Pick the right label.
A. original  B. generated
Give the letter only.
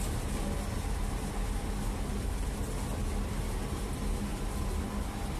A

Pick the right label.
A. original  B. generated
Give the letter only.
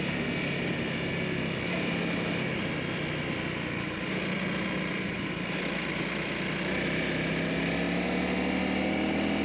A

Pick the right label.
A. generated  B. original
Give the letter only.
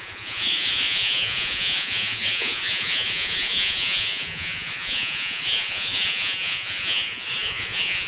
A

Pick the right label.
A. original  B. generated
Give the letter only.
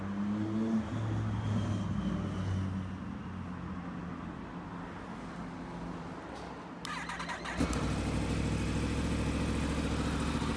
A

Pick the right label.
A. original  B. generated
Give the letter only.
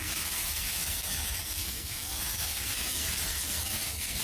B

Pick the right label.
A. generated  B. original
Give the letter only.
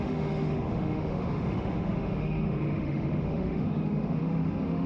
A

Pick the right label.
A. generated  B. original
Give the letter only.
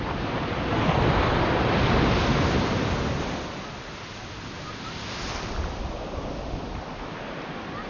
B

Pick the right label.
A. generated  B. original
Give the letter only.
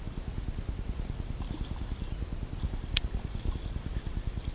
B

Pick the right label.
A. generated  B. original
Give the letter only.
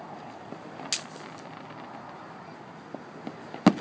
B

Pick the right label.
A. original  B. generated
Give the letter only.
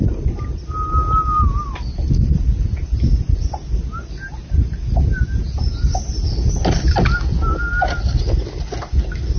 A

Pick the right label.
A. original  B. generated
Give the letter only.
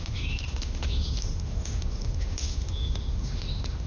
B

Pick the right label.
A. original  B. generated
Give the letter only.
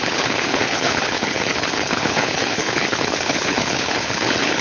B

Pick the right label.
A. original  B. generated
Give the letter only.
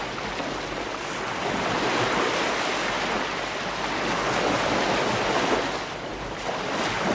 A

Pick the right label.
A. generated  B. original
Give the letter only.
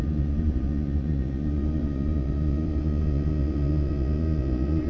A